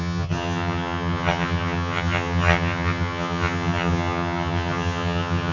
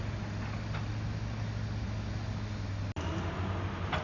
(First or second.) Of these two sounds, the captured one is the second